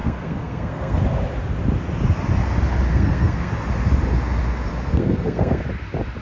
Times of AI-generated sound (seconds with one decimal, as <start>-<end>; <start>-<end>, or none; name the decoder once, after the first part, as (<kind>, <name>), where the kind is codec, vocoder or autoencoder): 0.0-1.0 (codec, SNAC); 2.9-3.5; 4.9-5.6